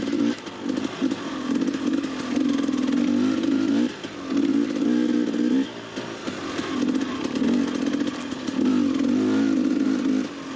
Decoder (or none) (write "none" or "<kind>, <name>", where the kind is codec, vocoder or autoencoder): none